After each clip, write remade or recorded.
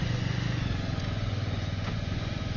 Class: remade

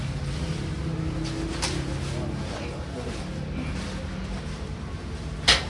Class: recorded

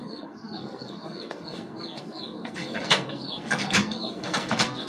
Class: remade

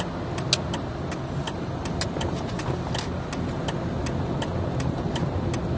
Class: recorded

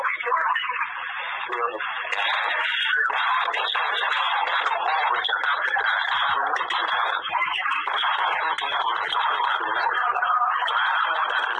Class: recorded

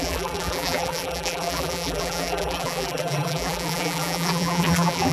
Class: remade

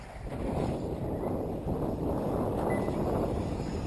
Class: recorded